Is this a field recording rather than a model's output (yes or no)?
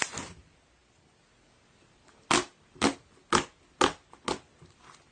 yes